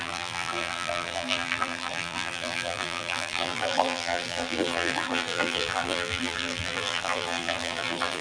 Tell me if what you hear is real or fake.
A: fake